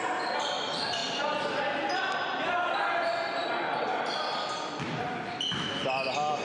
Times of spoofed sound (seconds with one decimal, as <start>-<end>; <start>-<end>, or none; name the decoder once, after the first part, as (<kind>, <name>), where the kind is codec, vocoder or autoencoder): none

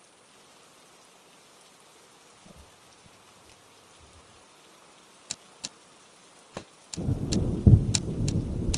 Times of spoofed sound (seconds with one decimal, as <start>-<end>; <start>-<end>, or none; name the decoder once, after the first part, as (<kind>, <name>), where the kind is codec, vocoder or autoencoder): none

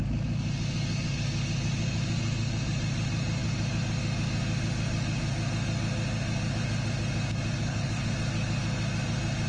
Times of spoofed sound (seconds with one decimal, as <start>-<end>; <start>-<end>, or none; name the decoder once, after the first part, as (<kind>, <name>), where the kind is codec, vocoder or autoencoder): 7.6-8.1 (codec, HILCodec)

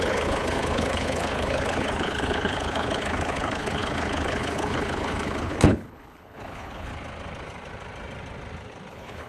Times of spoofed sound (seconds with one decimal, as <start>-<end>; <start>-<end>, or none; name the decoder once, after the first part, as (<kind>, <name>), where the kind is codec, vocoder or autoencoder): 0.0-6.9 (codec, HILCodec); 8.9-9.3

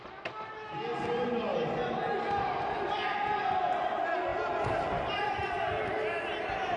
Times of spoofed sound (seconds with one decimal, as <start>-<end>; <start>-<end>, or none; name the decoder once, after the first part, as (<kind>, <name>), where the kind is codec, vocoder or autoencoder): none

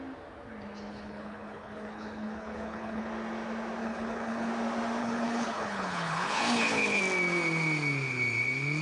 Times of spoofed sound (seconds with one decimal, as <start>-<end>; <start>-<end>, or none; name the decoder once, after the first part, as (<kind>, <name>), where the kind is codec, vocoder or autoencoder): 0.9-3.1 (codec, HILCodec); 3.8-4.5; 5.0-7.0

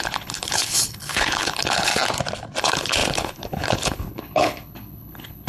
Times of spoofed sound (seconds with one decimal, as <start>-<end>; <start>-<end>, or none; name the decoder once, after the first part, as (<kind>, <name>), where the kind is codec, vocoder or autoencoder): 0.0-1.9 (codec, HILCodec); 2.6-5.5

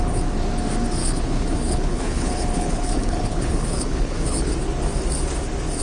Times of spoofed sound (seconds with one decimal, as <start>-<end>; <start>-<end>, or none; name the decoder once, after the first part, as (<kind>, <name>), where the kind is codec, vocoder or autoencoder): 1.0-4.5 (codec, HILCodec)